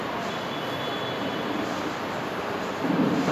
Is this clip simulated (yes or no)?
no